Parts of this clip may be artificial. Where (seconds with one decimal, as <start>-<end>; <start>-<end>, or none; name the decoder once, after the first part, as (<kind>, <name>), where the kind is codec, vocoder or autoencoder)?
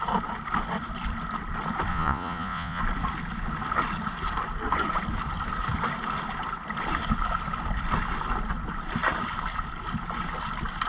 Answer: 1.9-2.8 (vocoder, Vocos)